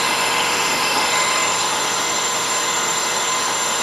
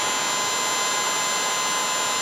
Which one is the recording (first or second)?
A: second